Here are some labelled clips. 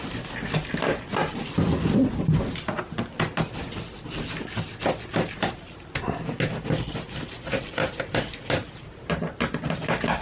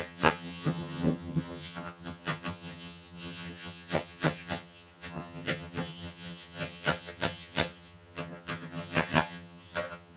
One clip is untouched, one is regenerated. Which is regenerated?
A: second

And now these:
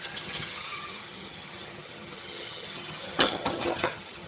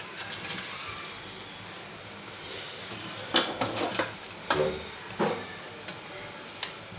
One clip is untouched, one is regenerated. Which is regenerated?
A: first